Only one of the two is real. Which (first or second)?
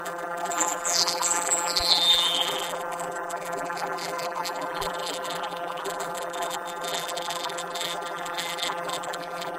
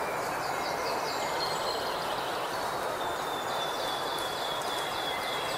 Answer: second